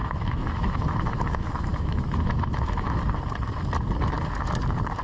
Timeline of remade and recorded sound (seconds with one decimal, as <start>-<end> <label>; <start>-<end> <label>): 0.0-3.0 remade; 3.0-5.0 recorded